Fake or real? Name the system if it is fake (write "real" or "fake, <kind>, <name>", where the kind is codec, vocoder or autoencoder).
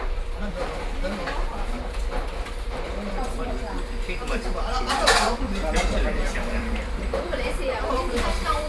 fake, vocoder, BigVGAN v2